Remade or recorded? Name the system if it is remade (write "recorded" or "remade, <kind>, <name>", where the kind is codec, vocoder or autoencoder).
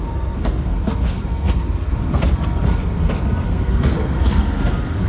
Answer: remade, codec, SNAC